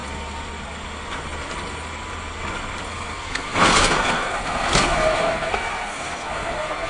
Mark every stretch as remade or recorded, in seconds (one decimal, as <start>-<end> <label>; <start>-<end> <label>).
0.0-2.9 recorded; 2.9-6.9 remade